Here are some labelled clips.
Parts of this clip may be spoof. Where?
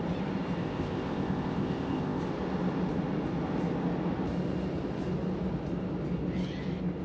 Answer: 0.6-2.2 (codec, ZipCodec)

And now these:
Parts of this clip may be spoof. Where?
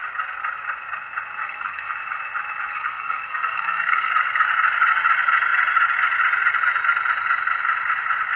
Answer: 1.4-1.9 (codec, SNAC); 2.7-4.1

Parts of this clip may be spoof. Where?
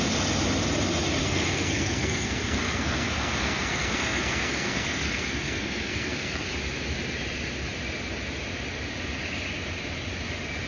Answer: 1.2-6.5 (codec, SNAC)